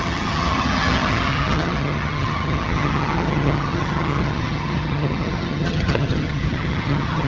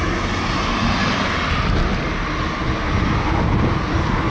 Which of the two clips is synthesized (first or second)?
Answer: first